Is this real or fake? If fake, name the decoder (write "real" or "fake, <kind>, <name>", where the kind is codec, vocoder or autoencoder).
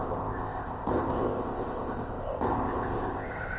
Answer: fake, codec, ZipCodec